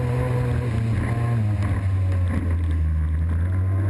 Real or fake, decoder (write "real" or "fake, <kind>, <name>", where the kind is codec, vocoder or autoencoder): real